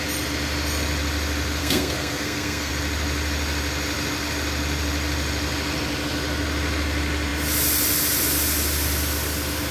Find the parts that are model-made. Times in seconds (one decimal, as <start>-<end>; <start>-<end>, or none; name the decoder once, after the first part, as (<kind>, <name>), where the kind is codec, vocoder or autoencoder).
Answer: 1.6-2.7 (codec, SNAC)